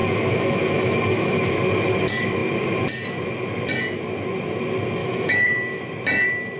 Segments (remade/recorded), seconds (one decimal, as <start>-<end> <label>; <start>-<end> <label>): 0.0-1.5 remade; 1.5-5.0 recorded; 5.0-5.8 remade; 5.8-6.6 recorded